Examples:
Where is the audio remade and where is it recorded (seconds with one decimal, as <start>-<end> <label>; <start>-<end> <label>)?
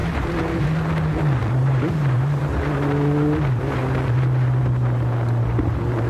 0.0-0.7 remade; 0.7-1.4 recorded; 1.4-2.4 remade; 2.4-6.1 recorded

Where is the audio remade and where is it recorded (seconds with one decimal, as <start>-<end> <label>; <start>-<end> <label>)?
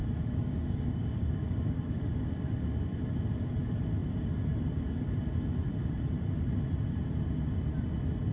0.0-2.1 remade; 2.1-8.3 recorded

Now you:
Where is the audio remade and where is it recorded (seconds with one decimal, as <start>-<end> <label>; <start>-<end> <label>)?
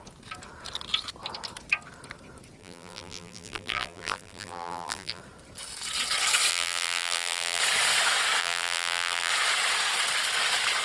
0.0-2.6 recorded; 2.6-5.2 remade; 5.2-6.5 recorded; 6.5-7.6 remade; 7.6-8.4 recorded; 8.4-9.3 remade; 9.3-10.8 recorded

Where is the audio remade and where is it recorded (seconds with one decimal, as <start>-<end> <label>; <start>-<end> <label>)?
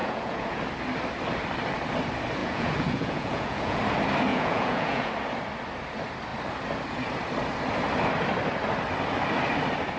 0.0-0.6 remade; 0.6-2.4 recorded; 2.4-3.8 remade; 3.8-4.3 recorded; 4.3-5.1 remade; 5.1-10.0 recorded